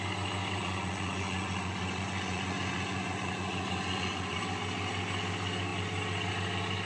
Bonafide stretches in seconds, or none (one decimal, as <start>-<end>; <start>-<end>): 0.0-0.6; 4.4-6.9